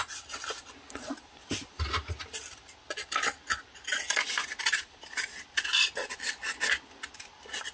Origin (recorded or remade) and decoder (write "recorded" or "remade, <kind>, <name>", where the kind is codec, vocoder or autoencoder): recorded